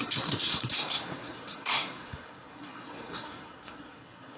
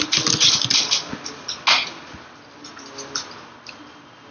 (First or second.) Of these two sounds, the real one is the second